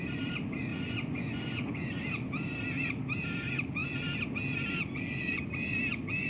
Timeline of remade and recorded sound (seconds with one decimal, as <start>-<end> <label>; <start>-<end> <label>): 0.0-0.7 recorded; 0.7-2.0 remade; 2.0-6.3 recorded